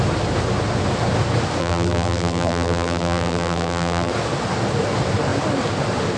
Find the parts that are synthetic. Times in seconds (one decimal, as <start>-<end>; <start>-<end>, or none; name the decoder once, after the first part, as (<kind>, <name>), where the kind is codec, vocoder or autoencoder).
1.6-4.1 (vocoder, BigVGAN v2)